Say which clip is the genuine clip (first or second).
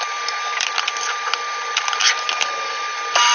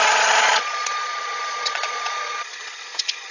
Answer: first